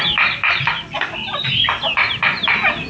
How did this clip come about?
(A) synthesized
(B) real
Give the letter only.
B